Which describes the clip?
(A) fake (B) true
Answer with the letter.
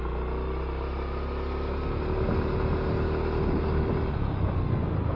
B